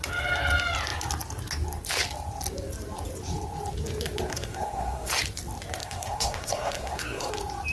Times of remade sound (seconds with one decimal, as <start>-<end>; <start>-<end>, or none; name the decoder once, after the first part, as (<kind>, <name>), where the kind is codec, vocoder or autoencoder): 4.3-5.1 (codec, SNAC); 5.8-7.3